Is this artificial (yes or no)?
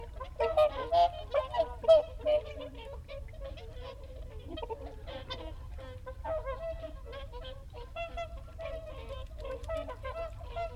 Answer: yes